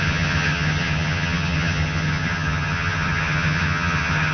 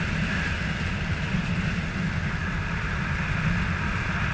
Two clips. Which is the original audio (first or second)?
second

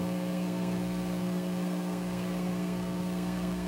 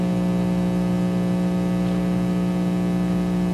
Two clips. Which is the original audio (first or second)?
second